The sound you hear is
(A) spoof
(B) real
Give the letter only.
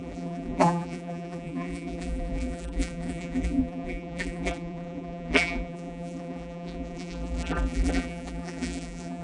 A